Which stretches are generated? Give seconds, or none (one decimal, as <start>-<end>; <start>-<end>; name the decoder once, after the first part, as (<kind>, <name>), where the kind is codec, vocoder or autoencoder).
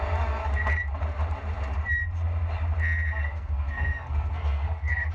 3.2-5.1 (codec, SNAC)